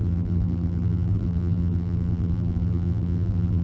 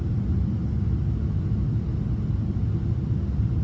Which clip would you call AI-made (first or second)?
first